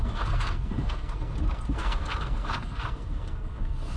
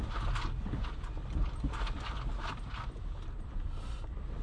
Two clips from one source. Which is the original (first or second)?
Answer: second